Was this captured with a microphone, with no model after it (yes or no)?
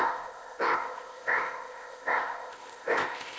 no